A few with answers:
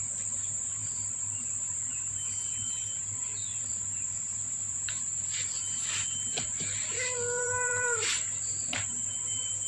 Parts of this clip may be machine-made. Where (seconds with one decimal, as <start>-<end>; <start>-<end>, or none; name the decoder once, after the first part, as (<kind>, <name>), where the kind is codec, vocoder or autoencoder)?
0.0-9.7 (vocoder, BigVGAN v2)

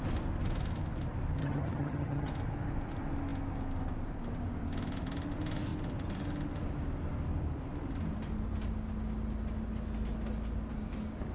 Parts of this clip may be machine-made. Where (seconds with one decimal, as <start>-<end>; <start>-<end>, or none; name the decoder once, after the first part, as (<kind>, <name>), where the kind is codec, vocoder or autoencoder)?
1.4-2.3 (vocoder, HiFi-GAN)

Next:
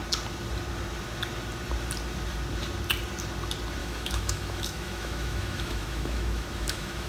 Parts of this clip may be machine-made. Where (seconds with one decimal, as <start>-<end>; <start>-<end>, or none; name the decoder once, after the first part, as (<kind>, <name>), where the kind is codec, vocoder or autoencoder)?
3.8-7.1 (autoencoder, DAC-VAE)

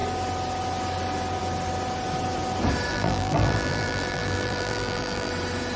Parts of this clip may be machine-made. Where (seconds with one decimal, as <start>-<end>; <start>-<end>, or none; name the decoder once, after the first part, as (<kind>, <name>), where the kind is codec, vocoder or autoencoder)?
2.9-5.3 (vocoder, BigVGAN v2)

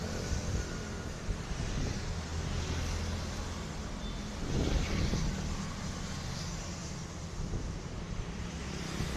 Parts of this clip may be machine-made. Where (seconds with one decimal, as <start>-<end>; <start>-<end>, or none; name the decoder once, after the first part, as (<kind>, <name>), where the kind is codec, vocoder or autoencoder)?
0.0-2.3 (vocoder, BigVGAN v2); 5.7-9.2